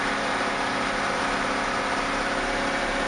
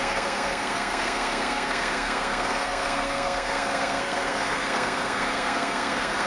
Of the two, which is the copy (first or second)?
second